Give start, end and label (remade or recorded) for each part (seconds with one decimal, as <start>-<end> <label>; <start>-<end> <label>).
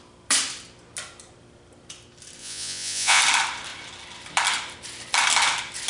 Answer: 0.0-2.4 recorded; 2.4-3.2 remade; 3.2-5.9 recorded